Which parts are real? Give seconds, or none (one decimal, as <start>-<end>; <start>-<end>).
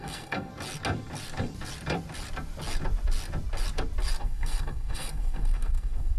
0.5-4.2